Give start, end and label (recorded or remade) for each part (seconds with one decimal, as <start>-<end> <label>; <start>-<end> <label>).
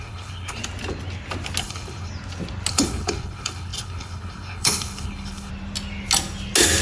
0.0-0.6 remade; 0.6-1.6 recorded; 1.6-2.1 remade; 2.1-2.7 recorded; 2.7-5.5 remade; 5.5-6.8 recorded